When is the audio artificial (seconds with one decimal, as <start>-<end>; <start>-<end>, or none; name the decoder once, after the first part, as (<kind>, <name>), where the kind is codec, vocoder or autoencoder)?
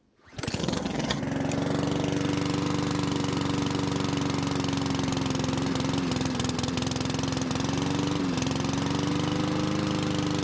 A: 0.6-1.2 (vocoder, HiFi-GAN)